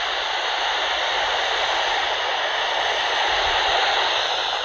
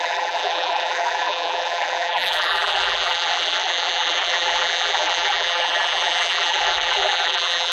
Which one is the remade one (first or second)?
second